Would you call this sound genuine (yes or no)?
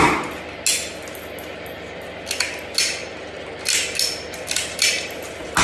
yes